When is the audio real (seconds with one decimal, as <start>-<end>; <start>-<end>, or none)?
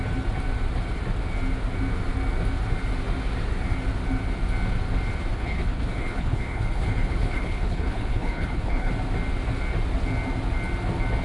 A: 0.0-5.3; 8.9-11.2